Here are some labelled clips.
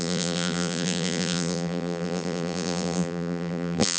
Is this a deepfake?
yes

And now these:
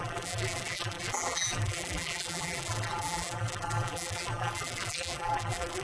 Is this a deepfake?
yes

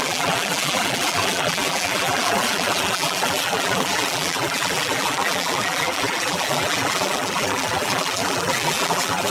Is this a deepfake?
yes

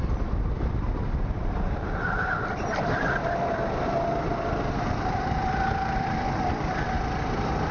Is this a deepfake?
yes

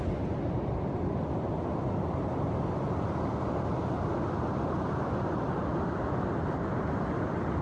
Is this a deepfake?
no